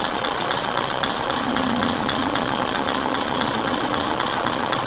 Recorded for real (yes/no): no